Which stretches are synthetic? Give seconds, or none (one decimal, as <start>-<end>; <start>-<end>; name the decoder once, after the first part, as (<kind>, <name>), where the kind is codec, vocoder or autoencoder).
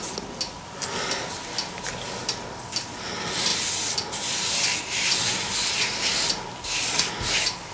none